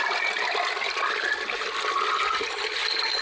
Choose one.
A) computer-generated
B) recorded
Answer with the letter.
B